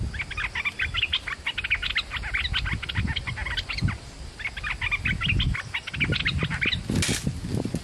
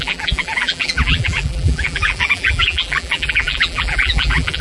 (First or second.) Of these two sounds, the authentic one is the first